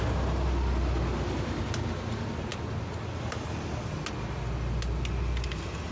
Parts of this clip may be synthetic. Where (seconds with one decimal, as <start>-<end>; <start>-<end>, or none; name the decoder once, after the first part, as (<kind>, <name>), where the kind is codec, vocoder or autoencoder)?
none